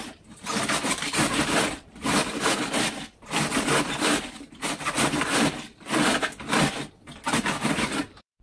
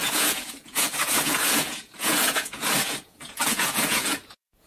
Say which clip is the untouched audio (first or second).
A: first